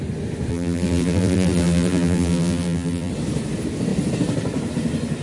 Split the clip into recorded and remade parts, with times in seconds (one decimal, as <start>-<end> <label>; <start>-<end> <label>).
0.0-0.5 recorded; 0.5-3.1 remade; 3.1-5.2 recorded